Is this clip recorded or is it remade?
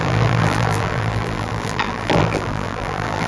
remade